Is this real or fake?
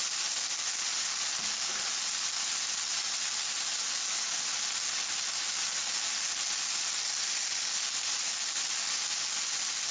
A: real